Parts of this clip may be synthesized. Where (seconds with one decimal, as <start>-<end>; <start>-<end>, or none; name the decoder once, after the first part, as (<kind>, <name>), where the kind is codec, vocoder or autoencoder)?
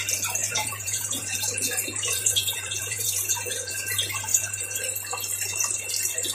0.4-3.7 (vocoder, Vocos); 4.3-4.8